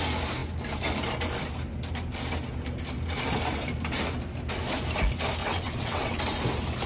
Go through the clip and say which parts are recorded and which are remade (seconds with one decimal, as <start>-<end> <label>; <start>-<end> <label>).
0.0-5.4 recorded; 5.4-6.2 remade; 6.2-6.9 recorded